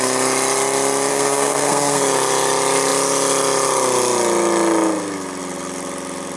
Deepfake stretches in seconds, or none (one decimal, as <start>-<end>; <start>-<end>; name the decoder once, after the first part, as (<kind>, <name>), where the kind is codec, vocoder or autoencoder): 1.1-2.0 (codec, SNAC)